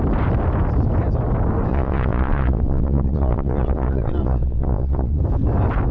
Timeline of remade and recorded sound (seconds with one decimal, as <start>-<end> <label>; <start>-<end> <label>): 0.0-1.7 recorded; 1.7-5.2 remade; 5.2-5.9 recorded